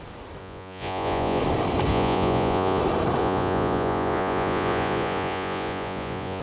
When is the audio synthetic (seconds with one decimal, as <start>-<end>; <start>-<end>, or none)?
0.4-1.4; 1.9-2.8; 3.2-6.4